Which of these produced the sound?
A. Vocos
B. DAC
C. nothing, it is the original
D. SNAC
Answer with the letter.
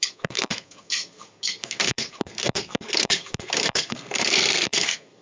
D